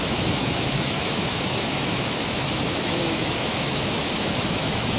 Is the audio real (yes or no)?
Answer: no